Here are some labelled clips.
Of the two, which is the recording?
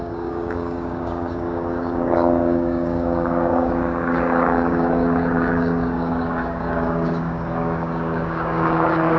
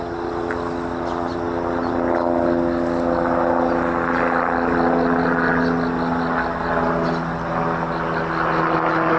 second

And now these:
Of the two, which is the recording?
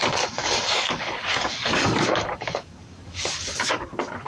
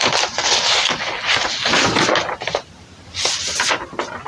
second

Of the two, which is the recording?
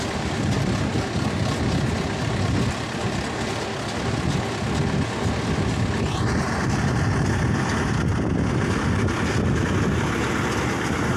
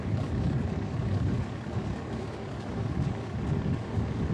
first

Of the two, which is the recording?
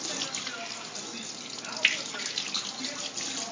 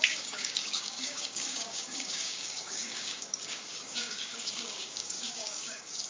first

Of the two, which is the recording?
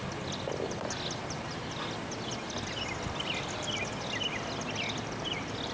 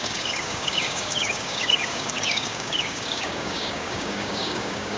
first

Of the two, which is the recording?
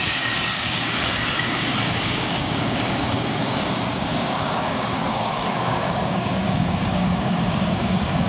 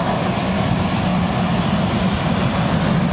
second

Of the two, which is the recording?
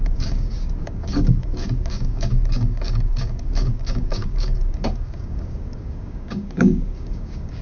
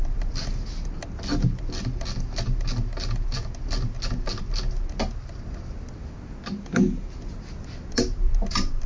second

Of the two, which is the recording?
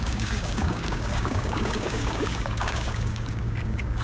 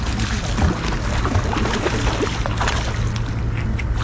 second